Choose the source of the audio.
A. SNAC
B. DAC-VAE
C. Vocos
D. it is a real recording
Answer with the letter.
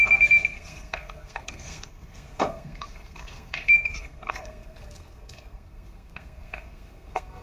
A